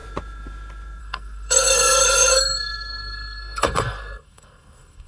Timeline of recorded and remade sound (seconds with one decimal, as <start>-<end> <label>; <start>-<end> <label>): 0.0-1.0 recorded; 1.0-5.1 remade